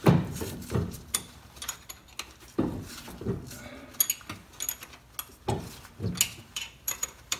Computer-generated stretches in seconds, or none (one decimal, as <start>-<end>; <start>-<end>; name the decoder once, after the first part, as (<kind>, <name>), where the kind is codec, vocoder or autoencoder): 0.0-2.0 (vocoder, BigVGAN v2); 6.4-7.4